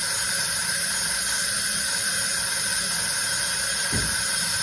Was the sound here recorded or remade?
recorded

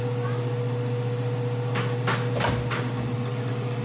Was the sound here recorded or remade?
recorded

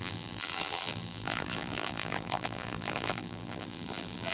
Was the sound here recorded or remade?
remade